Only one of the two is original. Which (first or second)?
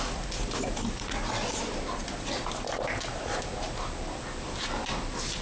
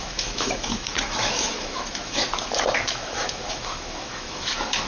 first